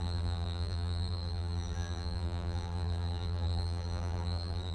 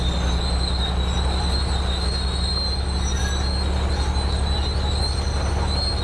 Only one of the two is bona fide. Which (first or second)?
second